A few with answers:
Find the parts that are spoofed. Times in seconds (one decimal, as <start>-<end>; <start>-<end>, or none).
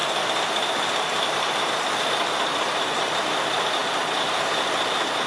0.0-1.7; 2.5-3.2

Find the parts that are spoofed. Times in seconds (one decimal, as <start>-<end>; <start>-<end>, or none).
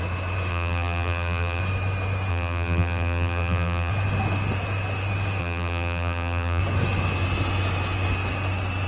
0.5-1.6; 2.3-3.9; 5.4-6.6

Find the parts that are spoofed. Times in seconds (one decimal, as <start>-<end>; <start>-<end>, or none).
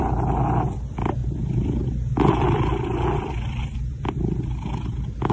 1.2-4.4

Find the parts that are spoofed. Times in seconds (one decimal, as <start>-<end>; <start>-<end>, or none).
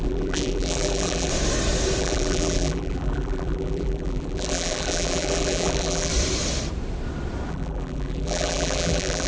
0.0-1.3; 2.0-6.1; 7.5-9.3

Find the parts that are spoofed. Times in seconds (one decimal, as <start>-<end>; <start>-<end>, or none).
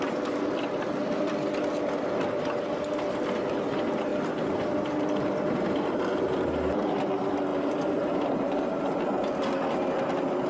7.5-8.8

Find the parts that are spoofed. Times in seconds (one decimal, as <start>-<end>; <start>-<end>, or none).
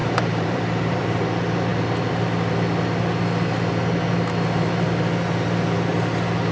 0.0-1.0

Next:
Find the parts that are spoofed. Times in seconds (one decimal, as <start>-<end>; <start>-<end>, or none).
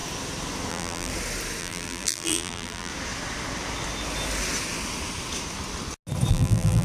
0.7-1.1; 1.6-2.9; 6.3-6.8